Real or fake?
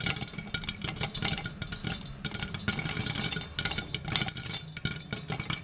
real